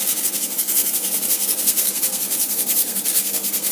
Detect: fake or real fake